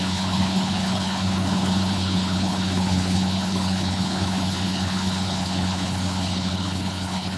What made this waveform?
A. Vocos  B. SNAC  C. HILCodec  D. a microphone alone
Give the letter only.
C